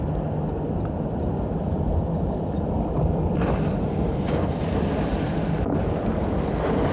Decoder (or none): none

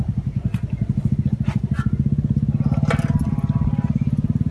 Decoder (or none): none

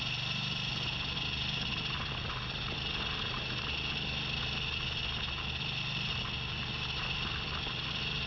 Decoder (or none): none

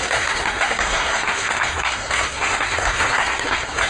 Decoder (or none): codec, SNAC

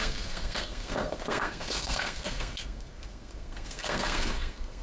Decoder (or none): codec, SNAC